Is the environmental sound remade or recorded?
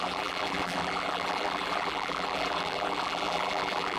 remade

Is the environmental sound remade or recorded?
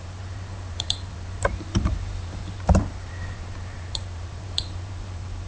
remade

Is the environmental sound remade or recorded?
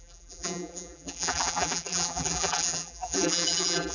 remade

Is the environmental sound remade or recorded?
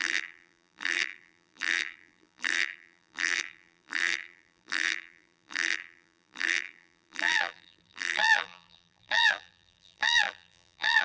remade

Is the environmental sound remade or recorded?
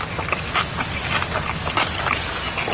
recorded